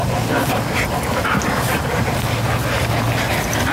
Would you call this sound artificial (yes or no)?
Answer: no